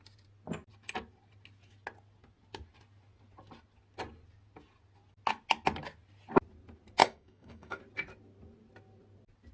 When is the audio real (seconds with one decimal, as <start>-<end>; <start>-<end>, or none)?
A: 0.0-7.0; 7.8-9.5